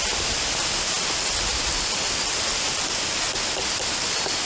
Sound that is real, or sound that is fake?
real